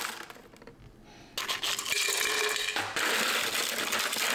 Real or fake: real